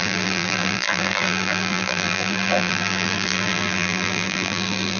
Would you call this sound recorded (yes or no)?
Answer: no